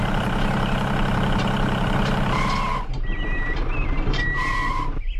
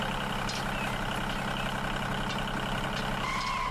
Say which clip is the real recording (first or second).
second